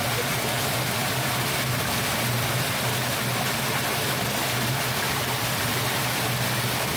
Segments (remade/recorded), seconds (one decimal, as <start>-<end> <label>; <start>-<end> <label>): 0.0-7.0 recorded